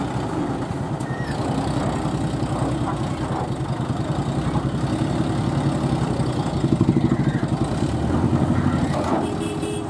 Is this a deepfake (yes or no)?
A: no